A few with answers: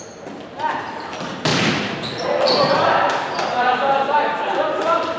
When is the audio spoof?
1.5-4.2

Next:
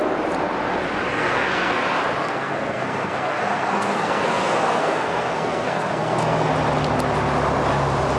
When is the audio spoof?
1.1-1.8; 2.2-6.5

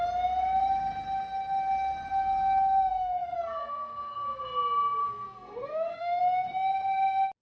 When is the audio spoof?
2.9-4.4; 5.0-6.2

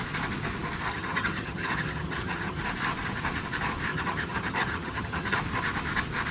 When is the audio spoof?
0.9-2.6; 3.9-5.4

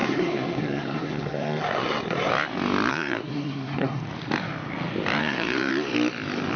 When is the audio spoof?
0.0-2.3; 2.9-4.0; 5.2-5.7